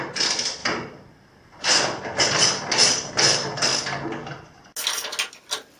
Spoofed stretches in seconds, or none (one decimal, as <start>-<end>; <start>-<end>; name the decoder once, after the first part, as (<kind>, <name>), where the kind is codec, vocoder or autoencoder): none